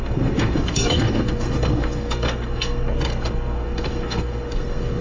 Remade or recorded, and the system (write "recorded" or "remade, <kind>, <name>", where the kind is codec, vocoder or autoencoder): remade, codec, SNAC